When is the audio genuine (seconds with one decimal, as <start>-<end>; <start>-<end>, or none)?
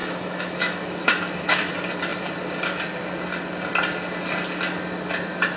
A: 1.7-5.6